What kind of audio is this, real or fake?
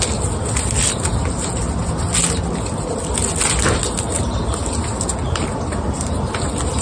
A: real